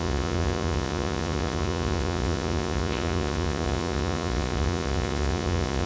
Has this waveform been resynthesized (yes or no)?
yes